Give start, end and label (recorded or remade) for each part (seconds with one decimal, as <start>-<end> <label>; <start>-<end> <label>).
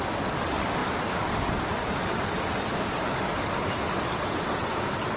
0.0-5.2 recorded